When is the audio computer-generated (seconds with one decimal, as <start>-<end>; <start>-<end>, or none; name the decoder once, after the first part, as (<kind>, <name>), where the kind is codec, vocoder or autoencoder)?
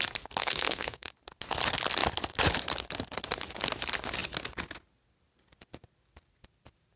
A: 0.4-1.1 (codec, SNAC)